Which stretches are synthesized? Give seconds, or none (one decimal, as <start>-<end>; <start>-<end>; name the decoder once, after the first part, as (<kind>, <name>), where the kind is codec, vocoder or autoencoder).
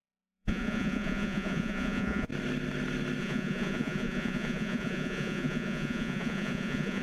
0.0-2.3 (vocoder, Vocos); 3.2-7.0